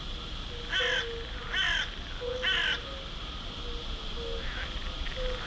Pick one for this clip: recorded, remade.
recorded